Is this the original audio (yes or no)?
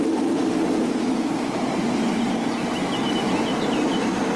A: yes